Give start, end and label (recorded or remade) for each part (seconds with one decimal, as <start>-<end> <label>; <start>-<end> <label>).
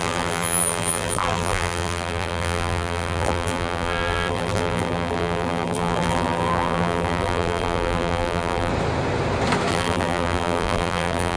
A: 0.0-8.7 remade; 8.7-9.7 recorded; 9.7-11.4 remade